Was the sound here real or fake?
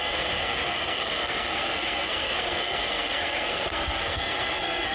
fake